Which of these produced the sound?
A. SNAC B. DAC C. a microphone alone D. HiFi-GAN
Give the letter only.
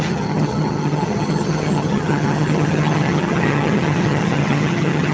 D